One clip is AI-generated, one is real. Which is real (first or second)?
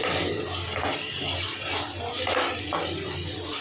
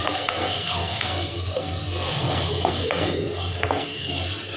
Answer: first